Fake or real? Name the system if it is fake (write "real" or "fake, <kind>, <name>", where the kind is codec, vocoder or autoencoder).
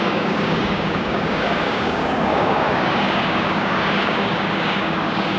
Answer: fake, codec, DAC